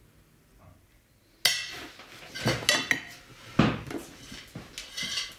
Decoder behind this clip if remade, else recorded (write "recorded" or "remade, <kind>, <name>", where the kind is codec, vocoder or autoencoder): recorded